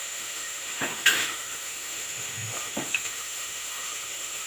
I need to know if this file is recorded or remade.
remade